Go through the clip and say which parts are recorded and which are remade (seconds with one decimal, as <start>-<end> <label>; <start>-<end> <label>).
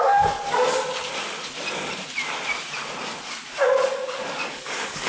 0.0-0.7 remade; 0.7-3.8 recorded; 3.8-5.1 remade